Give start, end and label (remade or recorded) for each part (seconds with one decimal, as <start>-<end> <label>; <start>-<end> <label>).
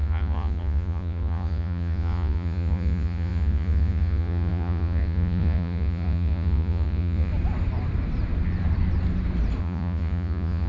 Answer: 0.0-7.3 remade; 7.3-9.6 recorded; 9.6-10.7 remade